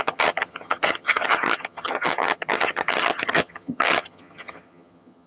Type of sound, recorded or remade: remade